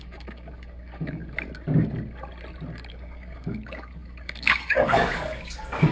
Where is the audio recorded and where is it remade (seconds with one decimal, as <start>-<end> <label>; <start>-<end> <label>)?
0.0-1.2 remade; 1.2-2.9 recorded; 2.9-5.9 remade